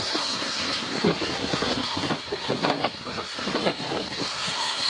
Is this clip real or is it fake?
fake